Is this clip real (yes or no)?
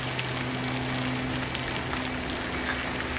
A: yes